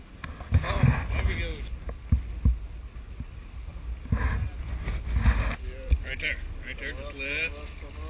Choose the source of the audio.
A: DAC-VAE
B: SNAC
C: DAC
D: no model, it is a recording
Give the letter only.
D